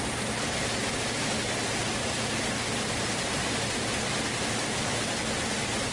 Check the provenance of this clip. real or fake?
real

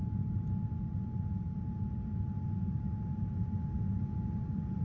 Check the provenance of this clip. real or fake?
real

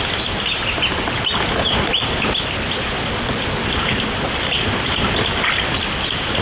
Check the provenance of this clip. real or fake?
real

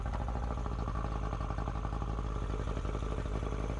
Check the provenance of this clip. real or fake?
real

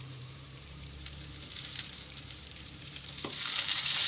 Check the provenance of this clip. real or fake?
fake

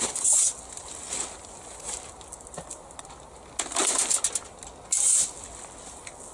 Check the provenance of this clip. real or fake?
real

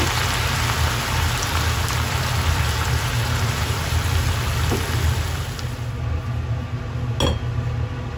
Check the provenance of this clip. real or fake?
real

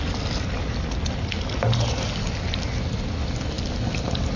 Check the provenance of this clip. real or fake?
real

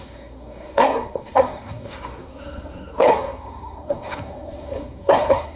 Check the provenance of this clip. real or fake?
fake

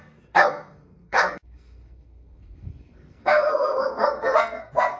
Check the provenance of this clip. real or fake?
fake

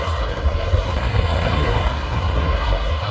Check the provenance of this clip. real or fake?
fake